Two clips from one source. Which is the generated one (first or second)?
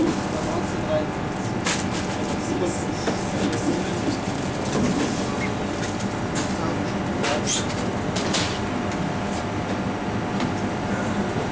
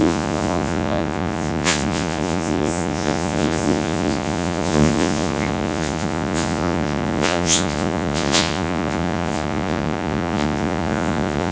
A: second